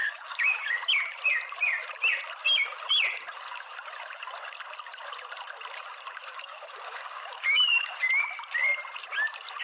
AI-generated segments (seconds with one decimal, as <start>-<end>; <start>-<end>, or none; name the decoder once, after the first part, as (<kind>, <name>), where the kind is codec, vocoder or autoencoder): 0.0-0.5 (codec, DAC); 6.3-8.1